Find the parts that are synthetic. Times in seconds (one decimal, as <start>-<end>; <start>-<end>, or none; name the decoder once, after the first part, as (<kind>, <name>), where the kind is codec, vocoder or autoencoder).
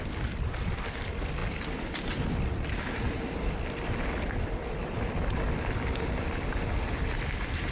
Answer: 0.0-7.7 (vocoder, BigVGAN v2)